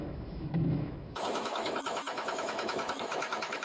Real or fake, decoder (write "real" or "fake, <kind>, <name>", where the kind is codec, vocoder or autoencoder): fake, autoencoder, DAC-VAE